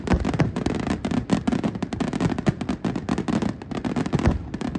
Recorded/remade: recorded